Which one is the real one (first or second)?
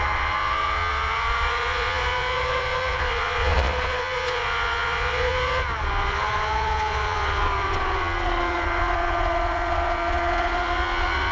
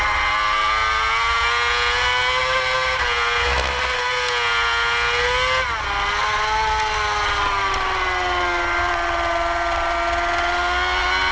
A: second